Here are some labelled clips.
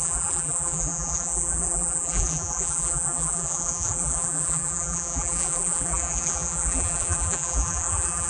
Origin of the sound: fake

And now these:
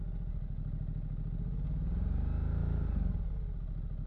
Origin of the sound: real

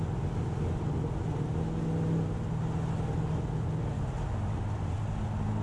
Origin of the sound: real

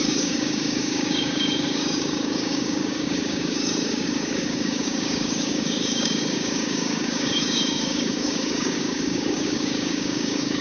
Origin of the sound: fake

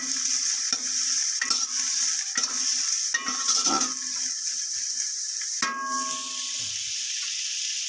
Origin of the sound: real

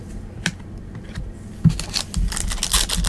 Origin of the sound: real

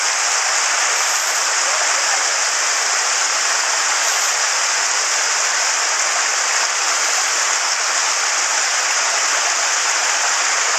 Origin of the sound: real